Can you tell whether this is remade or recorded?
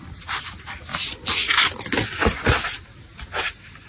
recorded